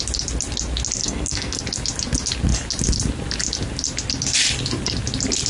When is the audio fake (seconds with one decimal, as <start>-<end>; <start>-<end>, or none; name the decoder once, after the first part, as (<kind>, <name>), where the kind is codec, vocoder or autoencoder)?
1.0-1.6 (codec, SNAC)